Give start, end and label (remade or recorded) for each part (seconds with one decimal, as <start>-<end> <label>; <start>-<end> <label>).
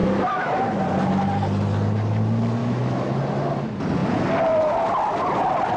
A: 0.0-0.8 remade; 0.8-2.6 recorded; 2.6-3.1 remade; 3.1-5.8 recorded